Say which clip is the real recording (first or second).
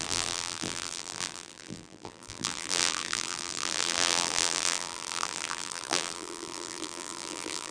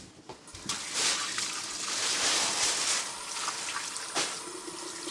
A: second